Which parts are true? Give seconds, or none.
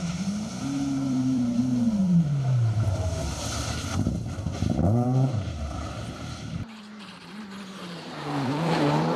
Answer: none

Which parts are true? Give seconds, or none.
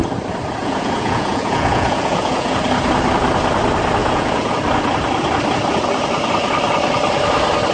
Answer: 0.0-0.6; 2.6-4.0; 4.5-7.7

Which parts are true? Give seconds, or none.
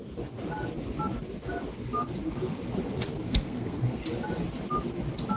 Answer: 0.0-3.2; 4.0-5.4